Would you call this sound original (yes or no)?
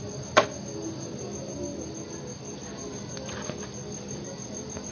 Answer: yes